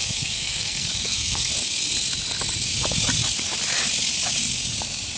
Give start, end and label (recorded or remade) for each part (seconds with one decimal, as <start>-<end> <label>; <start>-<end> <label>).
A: 0.0-1.5 remade; 1.5-5.2 recorded